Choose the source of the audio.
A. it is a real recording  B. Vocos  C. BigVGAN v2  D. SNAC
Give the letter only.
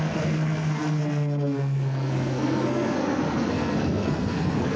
D